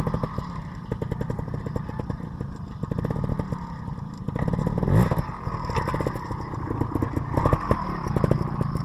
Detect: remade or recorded recorded